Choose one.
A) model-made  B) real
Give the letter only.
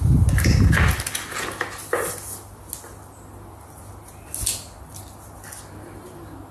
B